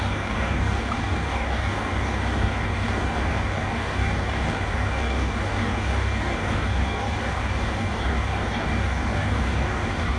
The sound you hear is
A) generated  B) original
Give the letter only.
A